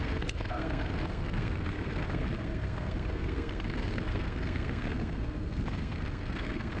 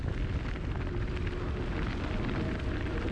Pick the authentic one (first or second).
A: second